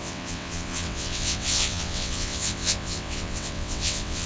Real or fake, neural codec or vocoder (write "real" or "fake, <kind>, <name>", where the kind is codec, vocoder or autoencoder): fake, vocoder, WaveNeXt